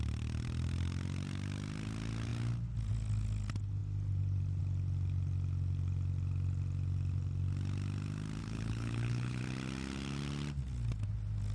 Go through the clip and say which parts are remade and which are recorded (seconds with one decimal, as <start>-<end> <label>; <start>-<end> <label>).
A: 0.0-8.4 recorded; 8.4-9.4 remade; 9.4-11.5 recorded